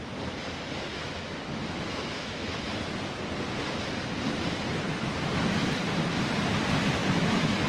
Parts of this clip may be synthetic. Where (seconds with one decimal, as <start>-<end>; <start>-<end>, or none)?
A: 0.9-2.7; 7.0-7.7